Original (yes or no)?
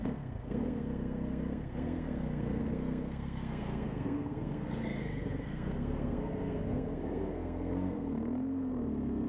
no